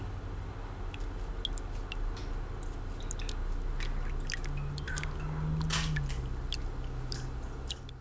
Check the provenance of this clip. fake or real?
real